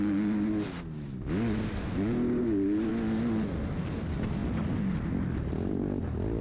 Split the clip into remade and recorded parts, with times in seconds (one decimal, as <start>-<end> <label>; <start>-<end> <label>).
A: 0.0-6.4 recorded